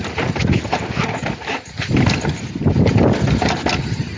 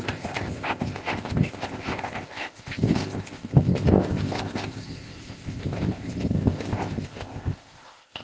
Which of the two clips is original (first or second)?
first